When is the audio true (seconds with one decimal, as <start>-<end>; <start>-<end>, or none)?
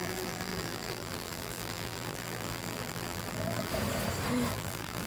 3.7-4.5